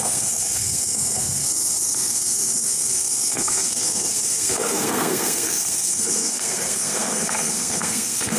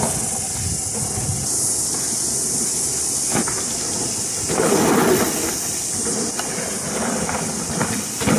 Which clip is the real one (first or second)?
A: second